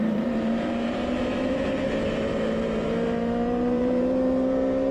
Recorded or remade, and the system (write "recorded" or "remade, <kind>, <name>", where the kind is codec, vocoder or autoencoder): remade, vocoder, BigVGAN v2